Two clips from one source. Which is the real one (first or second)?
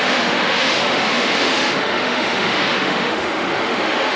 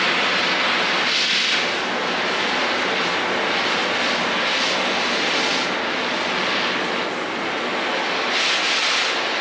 second